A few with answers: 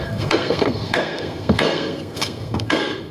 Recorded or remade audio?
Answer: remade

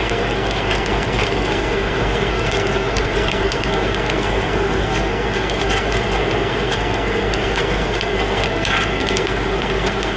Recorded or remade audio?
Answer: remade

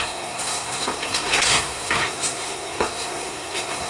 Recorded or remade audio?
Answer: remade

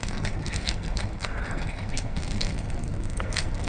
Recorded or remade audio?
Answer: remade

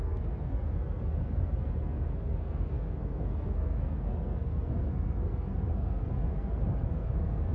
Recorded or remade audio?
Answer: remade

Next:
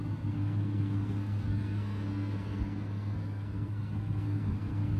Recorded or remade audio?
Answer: remade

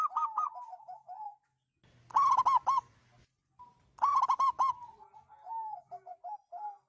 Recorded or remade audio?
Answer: recorded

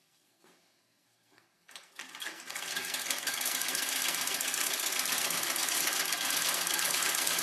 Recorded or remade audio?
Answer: remade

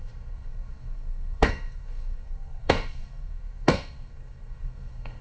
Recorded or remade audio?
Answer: remade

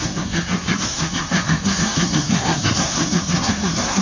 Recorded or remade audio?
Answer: remade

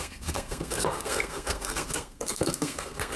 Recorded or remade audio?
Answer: remade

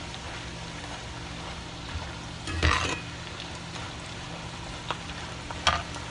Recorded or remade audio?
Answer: recorded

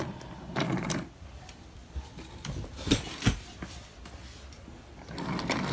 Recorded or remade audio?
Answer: recorded